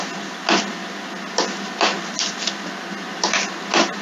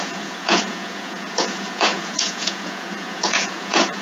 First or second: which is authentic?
first